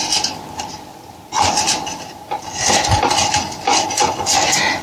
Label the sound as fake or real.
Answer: real